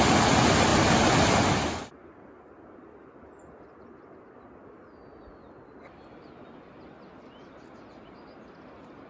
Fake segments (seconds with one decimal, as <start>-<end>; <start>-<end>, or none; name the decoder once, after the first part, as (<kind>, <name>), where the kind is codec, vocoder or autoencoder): none